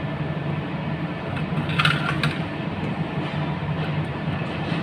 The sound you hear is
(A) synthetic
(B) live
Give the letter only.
B